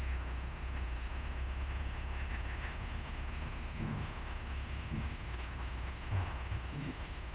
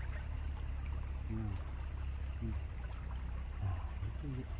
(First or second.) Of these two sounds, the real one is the second